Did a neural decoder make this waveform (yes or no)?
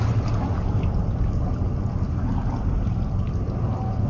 no